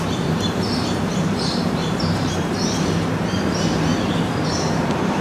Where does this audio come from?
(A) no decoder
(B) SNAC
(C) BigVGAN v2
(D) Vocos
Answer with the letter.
C